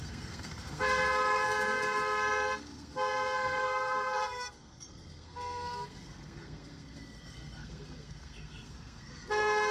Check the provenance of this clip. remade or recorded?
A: remade